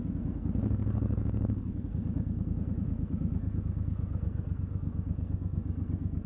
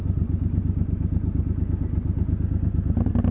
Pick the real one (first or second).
second